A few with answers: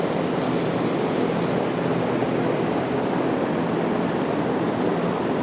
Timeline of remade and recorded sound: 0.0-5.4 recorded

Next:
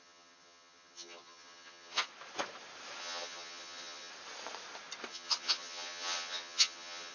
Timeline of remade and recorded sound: 0.0-2.1 remade; 2.1-3.0 recorded; 3.0-4.1 remade; 4.1-5.1 recorded; 5.1-7.1 remade

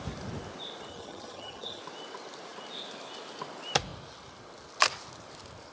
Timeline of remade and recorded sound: 0.0-0.9 recorded; 0.9-1.8 remade; 1.8-5.7 recorded